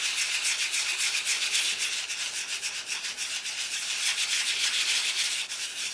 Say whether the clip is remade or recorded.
recorded